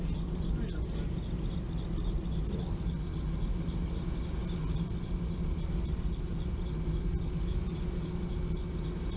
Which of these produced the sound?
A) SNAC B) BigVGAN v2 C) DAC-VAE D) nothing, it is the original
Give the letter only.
D